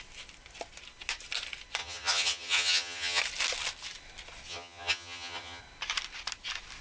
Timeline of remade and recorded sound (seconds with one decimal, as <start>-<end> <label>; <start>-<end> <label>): 0.0-1.8 recorded; 1.8-3.2 remade; 3.2-4.5 recorded; 4.5-5.6 remade; 5.6-6.8 recorded

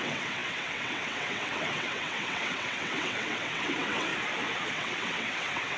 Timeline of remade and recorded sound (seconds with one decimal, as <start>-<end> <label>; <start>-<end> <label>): 0.0-4.1 remade; 4.1-4.7 recorded; 4.7-5.8 remade

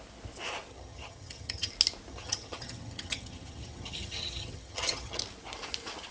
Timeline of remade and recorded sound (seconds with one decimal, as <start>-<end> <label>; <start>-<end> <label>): 0.0-0.7 recorded; 0.7-1.7 remade; 1.7-2.1 recorded; 2.1-5.2 remade; 5.2-6.1 recorded

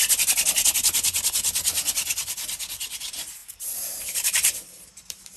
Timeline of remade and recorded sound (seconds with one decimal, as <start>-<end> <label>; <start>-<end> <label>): 0.0-2.9 recorded; 2.9-5.4 remade

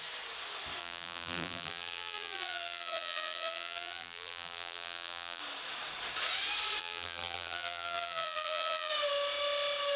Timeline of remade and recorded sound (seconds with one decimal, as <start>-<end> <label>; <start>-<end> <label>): 0.0-0.8 recorded; 0.8-5.4 remade; 5.4-6.8 recorded; 6.8-8.9 remade; 8.9-10.0 recorded